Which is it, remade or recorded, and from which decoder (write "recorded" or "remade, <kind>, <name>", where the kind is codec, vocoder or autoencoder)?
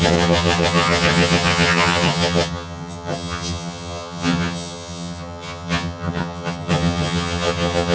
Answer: remade, vocoder, HiFi-GAN